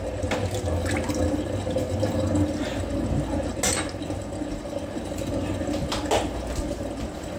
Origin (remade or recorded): recorded